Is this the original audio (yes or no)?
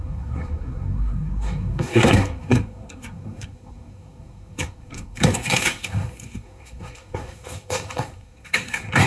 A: no